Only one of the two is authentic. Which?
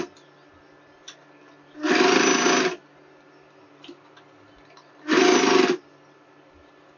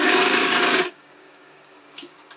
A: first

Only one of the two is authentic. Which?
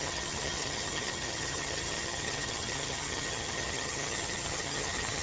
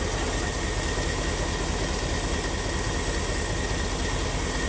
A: second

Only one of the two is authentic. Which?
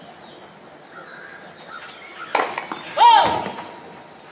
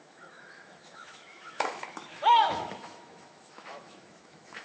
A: first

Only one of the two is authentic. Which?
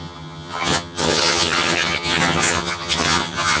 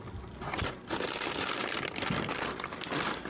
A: second